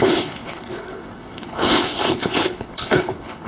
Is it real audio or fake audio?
fake